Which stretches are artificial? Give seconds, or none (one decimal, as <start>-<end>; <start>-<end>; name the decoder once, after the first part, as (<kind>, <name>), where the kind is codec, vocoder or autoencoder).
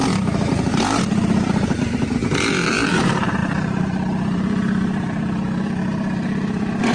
0.7-2.2 (vocoder, BigVGAN v2); 2.9-6.9